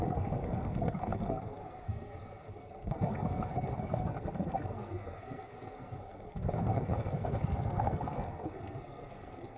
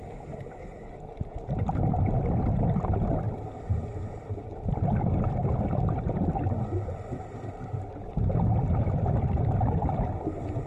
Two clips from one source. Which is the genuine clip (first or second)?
second